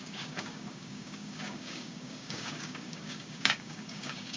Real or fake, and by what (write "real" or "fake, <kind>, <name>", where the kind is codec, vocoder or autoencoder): fake, codec, DAC